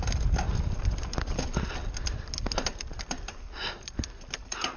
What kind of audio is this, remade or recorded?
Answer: recorded